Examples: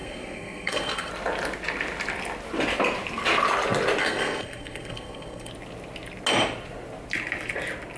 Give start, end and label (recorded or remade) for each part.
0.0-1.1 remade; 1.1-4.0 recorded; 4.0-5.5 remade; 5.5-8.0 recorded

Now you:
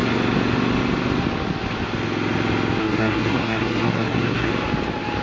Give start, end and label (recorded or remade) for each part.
0.0-2.8 recorded; 2.8-4.5 remade; 4.5-5.2 recorded